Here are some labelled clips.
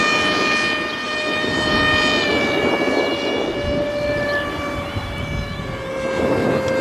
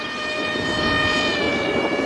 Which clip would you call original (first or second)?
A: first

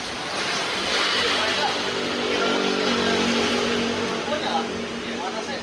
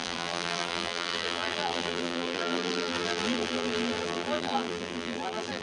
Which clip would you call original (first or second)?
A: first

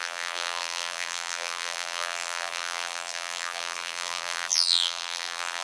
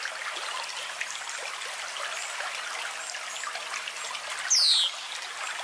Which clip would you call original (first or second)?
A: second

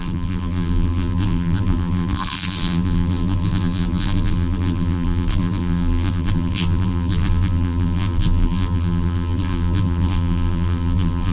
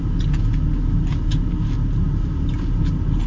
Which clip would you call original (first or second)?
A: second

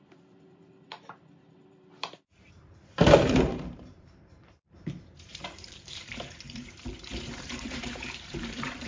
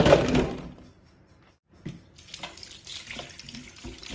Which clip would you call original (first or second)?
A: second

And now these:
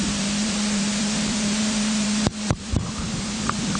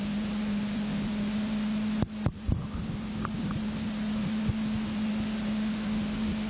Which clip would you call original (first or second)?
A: second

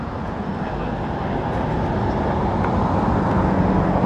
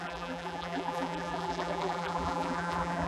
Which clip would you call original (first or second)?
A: first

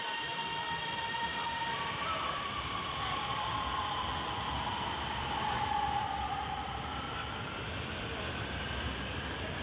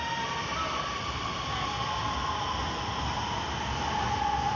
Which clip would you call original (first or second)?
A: second